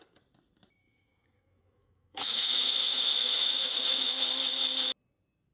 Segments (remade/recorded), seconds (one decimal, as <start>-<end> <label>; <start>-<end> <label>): 0.0-0.8 recorded; 0.8-4.1 remade; 4.1-5.5 recorded